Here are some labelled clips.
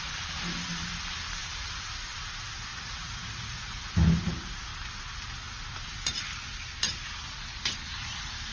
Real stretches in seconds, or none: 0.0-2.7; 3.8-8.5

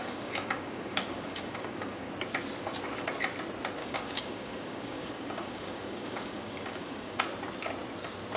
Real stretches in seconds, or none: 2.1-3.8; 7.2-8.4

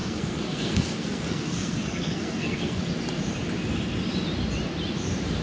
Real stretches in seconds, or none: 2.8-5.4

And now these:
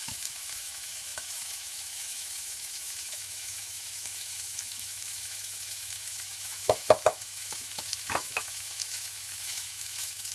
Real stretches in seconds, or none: none

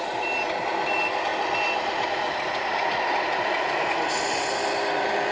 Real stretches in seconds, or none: 0.0-5.3